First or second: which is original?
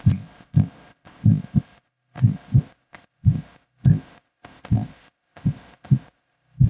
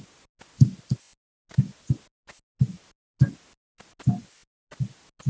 second